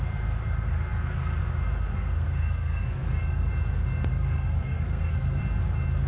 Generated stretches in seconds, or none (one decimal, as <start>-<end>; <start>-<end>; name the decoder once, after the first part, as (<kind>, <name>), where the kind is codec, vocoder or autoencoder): 1.9-3.5 (codec, SNAC); 4.1-5.4